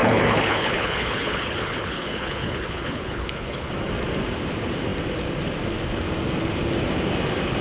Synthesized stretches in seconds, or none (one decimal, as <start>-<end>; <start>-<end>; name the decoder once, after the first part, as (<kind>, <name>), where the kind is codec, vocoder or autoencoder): 0.0-3.7 (codec, HILCodec)